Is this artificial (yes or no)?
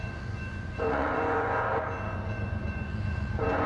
yes